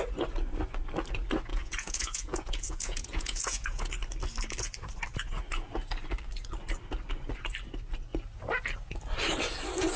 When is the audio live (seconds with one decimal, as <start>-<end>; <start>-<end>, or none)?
0.0-1.5; 3.9-10.0